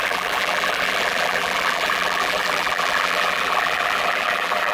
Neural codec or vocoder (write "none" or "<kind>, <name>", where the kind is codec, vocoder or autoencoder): vocoder, BigVGAN v2